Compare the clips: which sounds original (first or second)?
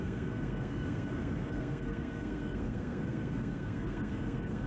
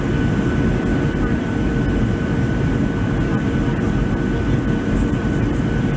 second